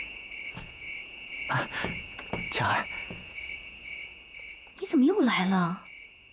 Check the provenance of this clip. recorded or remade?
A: remade